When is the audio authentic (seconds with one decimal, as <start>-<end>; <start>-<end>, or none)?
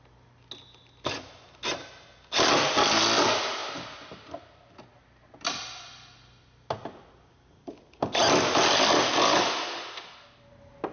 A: 0.0-10.9